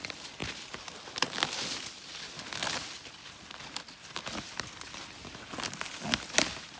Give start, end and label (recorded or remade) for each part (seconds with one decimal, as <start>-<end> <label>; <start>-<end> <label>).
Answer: 0.0-6.8 recorded